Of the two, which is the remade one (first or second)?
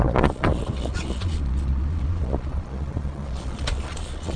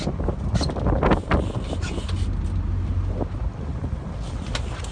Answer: first